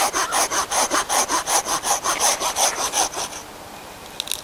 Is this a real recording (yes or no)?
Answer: yes